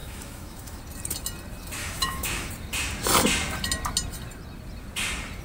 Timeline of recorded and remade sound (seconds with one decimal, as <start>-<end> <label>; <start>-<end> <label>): 0.0-0.8 remade; 0.8-1.8 recorded; 1.8-2.5 remade; 2.5-5.4 recorded